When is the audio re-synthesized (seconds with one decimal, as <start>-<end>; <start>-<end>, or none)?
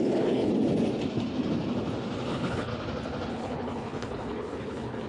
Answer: 0.0-0.5; 2.3-2.7; 3.3-5.1